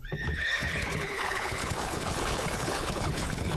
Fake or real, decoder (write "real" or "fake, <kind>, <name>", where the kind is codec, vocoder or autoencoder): fake, codec, HILCodec